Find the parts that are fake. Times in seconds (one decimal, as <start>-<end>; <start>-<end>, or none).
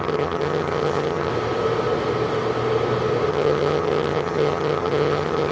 0.0-1.3; 3.3-5.5